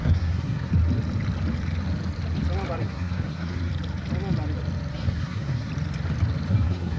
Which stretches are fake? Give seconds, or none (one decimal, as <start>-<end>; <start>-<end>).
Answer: 0.0-0.7; 2.8-3.7; 4.9-5.7; 6.5-7.0